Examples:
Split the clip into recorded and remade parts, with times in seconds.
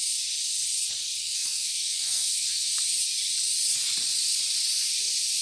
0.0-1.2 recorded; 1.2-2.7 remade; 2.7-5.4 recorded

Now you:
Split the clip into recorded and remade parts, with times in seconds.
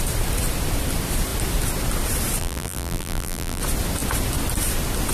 0.0-2.4 recorded; 2.4-3.6 remade; 3.6-5.1 recorded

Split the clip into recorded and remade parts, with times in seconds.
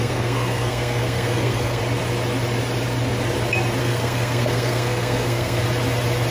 0.0-1.8 remade; 1.8-3.8 recorded; 3.8-5.6 remade; 5.6-6.3 recorded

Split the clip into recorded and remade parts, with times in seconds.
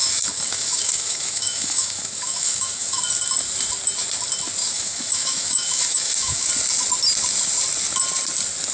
0.0-3.0 remade; 3.0-4.6 recorded; 4.6-6.5 remade; 6.5-8.7 recorded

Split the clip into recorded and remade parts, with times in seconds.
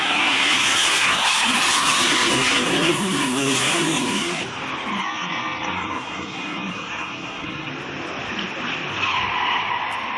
0.0-4.4 remade; 4.4-5.0 recorded; 5.0-7.7 remade; 7.7-10.2 recorded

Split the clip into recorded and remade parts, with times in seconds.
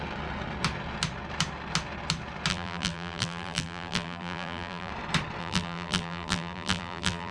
0.0-2.5 recorded; 2.5-4.9 remade; 4.9-5.4 recorded; 5.4-7.3 remade